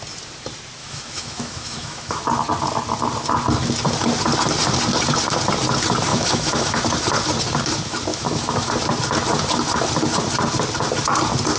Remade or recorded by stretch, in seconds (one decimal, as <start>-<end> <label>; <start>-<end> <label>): 0.0-0.8 recorded; 0.8-2.3 remade; 2.3-6.1 recorded; 6.1-6.8 remade; 6.8-8.1 recorded; 8.1-8.7 remade; 8.7-11.6 recorded